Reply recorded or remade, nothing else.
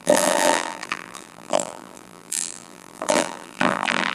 remade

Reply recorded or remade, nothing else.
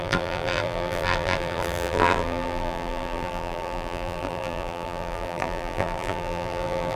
remade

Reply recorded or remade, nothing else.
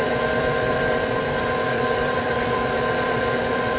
remade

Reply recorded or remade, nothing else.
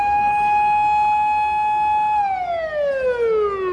recorded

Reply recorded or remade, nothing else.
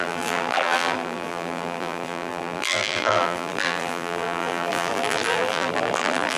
remade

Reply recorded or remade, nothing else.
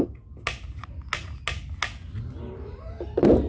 recorded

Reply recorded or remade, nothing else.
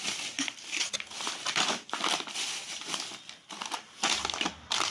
remade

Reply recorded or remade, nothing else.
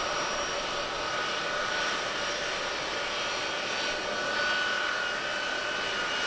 recorded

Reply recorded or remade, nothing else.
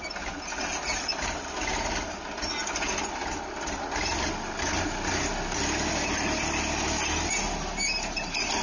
recorded